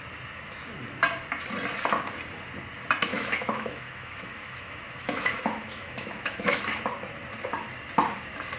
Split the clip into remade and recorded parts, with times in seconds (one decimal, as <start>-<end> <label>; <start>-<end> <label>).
0.0-3.1 recorded; 3.1-6.6 remade; 6.6-8.6 recorded